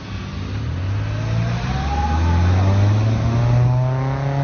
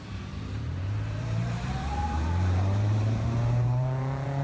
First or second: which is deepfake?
second